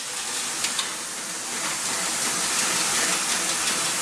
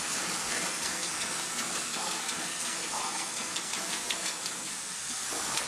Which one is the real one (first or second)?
first